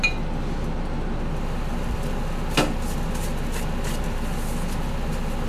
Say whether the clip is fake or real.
real